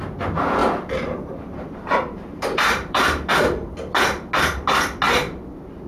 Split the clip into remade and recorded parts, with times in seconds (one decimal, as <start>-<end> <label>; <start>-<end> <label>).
0.0-0.6 recorded; 0.6-3.3 remade; 3.3-5.9 recorded

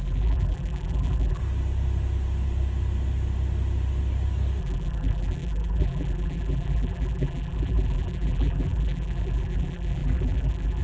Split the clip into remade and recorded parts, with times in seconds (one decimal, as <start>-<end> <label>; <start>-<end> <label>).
0.0-1.4 remade; 1.4-4.6 recorded; 4.6-10.8 remade

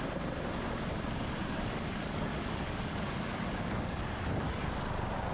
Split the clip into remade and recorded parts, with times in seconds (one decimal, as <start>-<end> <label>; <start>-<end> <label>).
0.0-1.5 recorded; 1.5-4.7 remade; 4.7-5.3 recorded

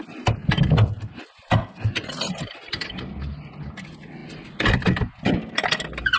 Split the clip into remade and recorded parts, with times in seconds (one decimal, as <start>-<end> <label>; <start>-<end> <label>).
0.0-6.2 recorded